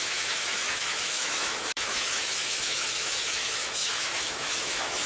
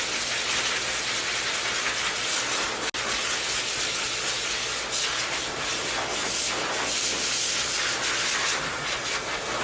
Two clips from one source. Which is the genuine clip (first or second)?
second